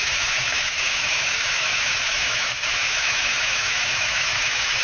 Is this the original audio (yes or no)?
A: no